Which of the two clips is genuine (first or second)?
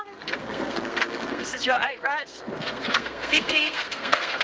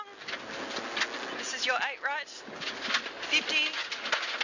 second